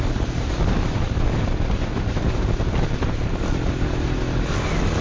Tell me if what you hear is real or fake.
real